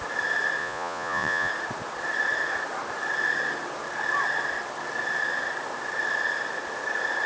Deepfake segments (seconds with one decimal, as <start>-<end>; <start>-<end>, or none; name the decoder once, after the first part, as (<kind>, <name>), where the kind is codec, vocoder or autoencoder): 0.6-1.5 (vocoder, Vocos)